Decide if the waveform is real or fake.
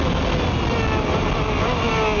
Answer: real